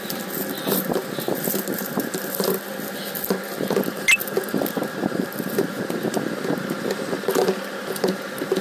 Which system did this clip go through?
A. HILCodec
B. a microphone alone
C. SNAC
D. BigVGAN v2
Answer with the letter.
B